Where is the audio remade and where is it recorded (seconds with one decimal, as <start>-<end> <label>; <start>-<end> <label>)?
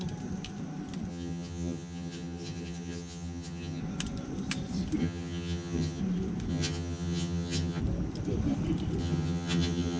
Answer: 0.0-1.1 recorded; 1.1-3.8 remade; 3.8-5.0 recorded; 5.0-6.0 remade; 6.0-6.5 recorded; 6.5-7.8 remade; 7.8-9.0 recorded; 9.0-10.0 remade